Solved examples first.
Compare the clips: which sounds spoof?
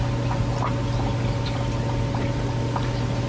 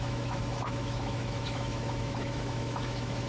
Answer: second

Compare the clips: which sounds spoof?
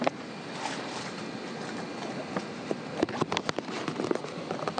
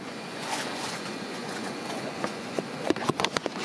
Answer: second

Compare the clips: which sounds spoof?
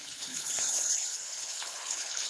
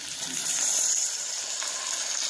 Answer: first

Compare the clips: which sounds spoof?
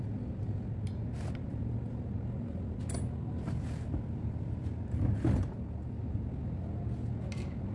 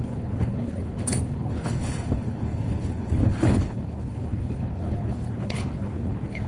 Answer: second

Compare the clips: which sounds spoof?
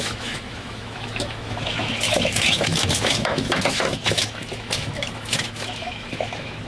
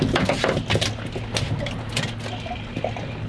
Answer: first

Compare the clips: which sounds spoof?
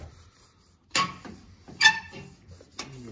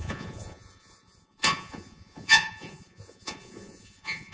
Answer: second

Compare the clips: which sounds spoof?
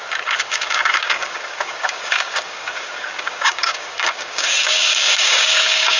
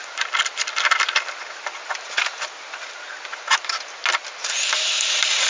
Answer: first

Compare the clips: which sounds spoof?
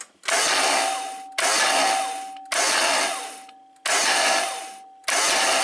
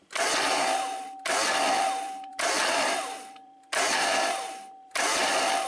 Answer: second